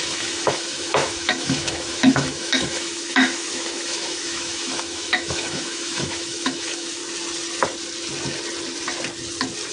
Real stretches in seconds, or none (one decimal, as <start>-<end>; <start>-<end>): 7.0-9.7